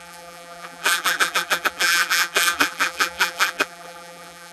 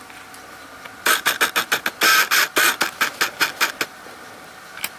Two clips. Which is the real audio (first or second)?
second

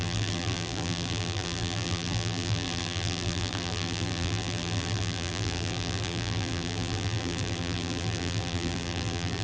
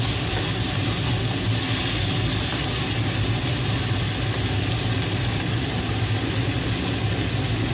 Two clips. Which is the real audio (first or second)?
second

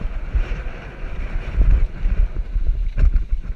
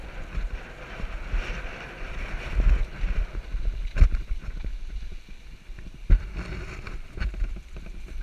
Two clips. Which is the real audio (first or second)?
second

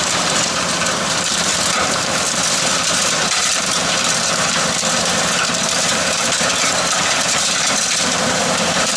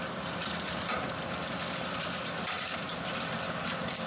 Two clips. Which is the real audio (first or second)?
second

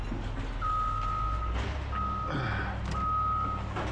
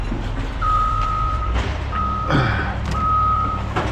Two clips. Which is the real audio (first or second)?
first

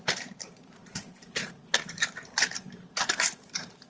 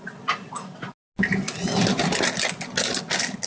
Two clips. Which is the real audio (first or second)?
second